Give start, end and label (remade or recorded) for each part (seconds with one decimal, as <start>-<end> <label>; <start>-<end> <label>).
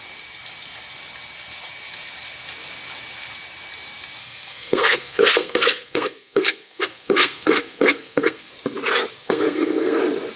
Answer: 0.0-4.2 recorded; 4.2-8.5 remade; 8.5-9.1 recorded; 9.1-10.0 remade; 10.0-10.4 recorded